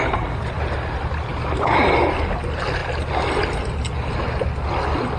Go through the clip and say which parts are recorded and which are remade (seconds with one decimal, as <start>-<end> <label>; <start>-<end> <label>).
0.0-5.2 recorded